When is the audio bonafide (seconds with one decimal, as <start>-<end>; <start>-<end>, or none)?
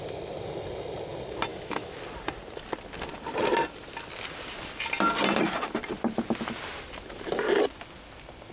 0.0-1.5; 2.0-8.5